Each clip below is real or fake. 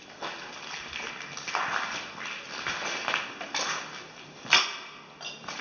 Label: real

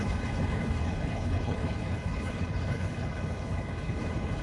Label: fake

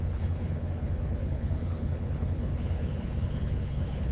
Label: fake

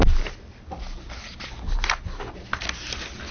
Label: real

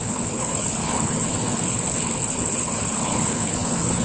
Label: fake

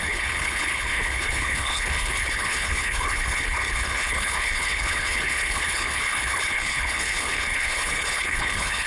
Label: fake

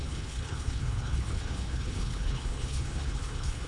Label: fake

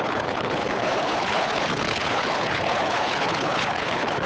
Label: fake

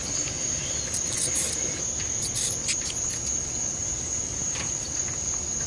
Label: real